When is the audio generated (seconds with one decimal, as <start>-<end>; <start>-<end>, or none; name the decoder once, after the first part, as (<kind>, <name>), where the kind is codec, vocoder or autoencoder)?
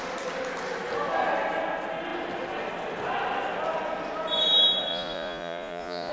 4.9-6.1 (vocoder, Vocos)